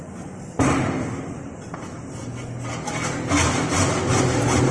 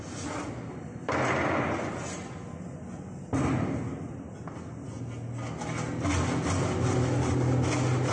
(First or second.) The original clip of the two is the second